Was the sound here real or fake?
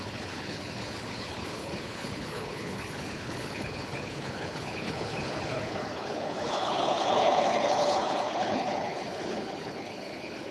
fake